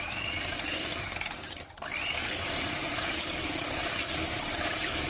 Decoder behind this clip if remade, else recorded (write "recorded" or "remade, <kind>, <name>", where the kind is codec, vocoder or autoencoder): remade, vocoder, BigVGAN v2